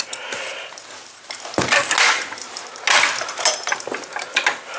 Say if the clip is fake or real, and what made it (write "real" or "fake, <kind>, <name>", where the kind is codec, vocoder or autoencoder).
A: real